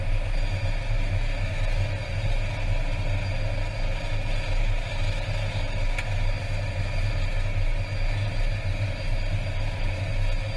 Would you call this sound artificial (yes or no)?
no